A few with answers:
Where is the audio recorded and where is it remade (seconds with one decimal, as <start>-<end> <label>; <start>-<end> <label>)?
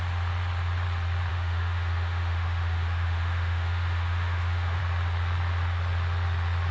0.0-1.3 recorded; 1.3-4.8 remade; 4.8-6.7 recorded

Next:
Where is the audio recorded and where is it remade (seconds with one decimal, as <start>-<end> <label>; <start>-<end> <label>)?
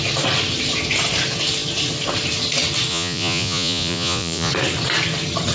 0.0-2.9 recorded; 2.9-4.5 remade; 4.5-5.5 recorded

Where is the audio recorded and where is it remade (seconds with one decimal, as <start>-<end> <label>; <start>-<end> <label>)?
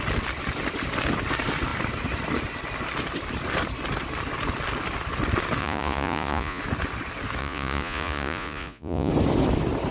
0.0-5.6 recorded; 5.6-6.6 remade; 6.6-7.4 recorded; 7.4-9.1 remade; 9.1-9.9 recorded